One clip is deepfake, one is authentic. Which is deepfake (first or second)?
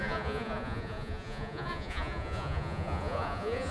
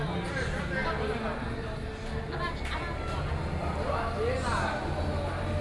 first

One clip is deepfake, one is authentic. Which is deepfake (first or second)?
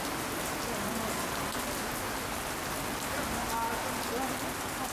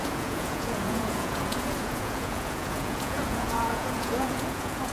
second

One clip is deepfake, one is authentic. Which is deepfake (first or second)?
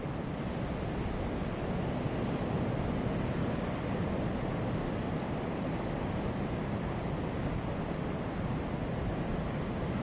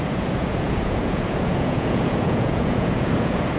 second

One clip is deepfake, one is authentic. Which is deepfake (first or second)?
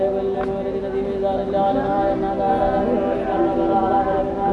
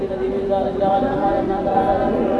second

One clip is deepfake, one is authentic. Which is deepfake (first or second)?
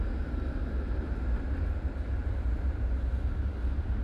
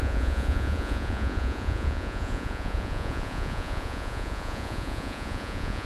second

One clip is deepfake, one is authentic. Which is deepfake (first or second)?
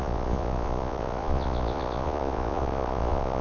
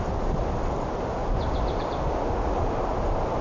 first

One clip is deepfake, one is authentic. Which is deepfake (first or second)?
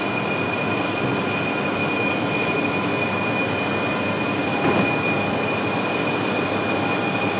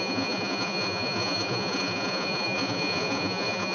second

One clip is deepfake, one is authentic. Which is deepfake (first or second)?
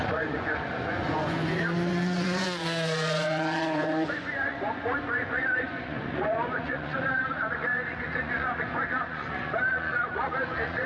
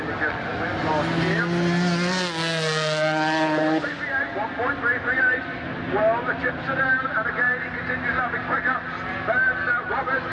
first